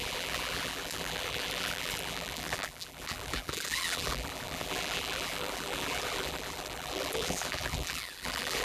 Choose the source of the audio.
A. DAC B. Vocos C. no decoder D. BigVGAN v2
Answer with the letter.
D